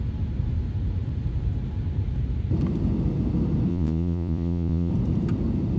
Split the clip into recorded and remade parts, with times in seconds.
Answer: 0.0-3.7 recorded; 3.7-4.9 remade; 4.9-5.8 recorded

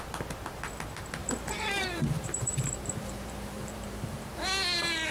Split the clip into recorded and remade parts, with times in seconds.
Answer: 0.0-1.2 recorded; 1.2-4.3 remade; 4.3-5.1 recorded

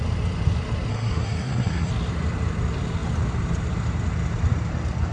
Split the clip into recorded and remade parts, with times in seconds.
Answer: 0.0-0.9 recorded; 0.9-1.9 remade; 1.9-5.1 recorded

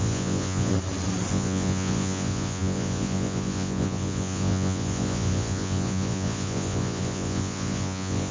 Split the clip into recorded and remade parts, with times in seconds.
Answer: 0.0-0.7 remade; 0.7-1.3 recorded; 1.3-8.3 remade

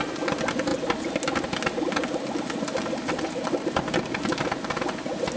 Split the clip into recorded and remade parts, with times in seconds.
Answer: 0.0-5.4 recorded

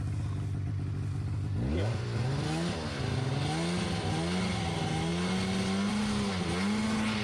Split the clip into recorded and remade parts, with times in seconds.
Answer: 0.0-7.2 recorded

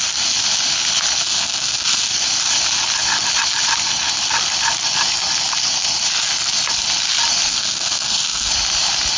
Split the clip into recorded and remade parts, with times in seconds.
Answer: 0.0-1.2 recorded; 1.2-2.1 remade; 2.1-7.5 recorded; 7.5-8.5 remade; 8.5-9.2 recorded

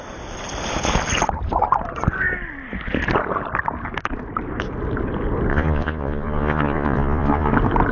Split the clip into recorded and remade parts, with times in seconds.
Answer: 0.0-5.5 recorded; 5.5-7.5 remade; 7.5-7.9 recorded